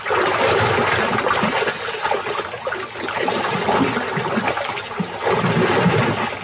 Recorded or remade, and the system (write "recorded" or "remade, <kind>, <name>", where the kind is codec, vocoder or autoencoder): recorded